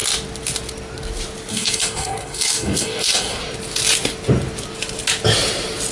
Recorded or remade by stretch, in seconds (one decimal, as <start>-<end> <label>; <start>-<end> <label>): 0.0-1.5 recorded; 1.5-3.4 remade; 3.4-5.9 recorded

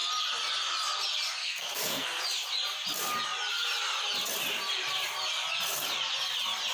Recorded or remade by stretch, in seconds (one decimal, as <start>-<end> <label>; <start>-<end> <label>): 0.0-1.4 recorded; 1.4-2.2 remade; 2.2-6.7 recorded

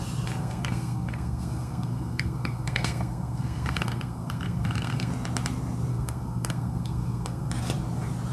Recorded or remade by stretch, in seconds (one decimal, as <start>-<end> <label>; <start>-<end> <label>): 0.0-0.4 recorded; 0.4-5.1 remade; 5.1-5.9 recorded; 5.9-7.5 remade; 7.5-8.3 recorded

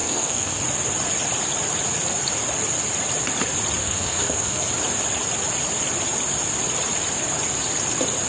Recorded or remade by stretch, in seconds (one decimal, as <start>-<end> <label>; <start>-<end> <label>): 0.0-0.6 remade; 0.6-3.8 recorded; 3.8-4.7 remade; 4.7-8.3 recorded

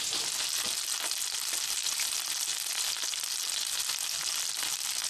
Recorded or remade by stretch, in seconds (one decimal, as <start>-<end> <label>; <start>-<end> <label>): 0.0-5.1 recorded

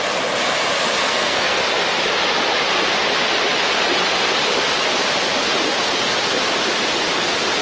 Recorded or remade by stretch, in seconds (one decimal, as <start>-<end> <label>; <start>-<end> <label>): 0.0-1.0 recorded; 1.0-1.6 remade; 1.6-7.6 recorded